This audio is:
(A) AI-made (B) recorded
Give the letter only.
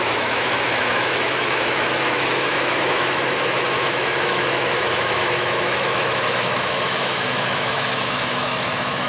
A